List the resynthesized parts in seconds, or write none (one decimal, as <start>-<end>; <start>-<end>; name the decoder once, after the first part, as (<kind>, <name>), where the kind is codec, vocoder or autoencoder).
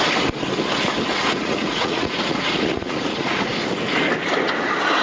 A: 1.1-3.5 (vocoder, Vocos)